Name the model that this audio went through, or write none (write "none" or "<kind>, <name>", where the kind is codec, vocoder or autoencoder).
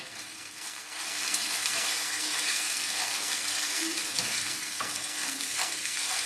codec, SNAC